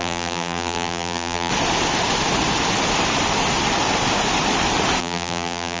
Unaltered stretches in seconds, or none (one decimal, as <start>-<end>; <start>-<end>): 1.5-5.0